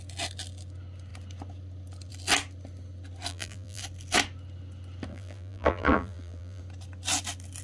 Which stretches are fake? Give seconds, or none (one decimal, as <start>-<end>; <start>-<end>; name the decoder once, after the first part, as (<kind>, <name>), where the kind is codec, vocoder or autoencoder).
3.3-3.8 (vocoder, BigVGAN v2); 5.1-6.6